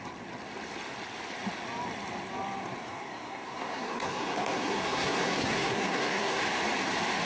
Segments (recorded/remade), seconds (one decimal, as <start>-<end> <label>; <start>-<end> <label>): 0.0-2.8 recorded; 2.8-6.4 remade; 6.4-7.3 recorded

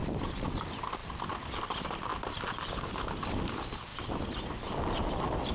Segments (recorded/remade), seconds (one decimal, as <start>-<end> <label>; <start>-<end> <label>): 0.0-0.6 remade; 0.6-1.0 recorded; 1.0-1.7 remade; 1.7-3.9 recorded; 3.9-4.4 remade; 4.4-5.5 recorded